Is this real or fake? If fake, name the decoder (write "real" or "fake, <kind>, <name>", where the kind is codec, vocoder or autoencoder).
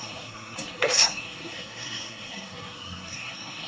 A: fake, codec, SNAC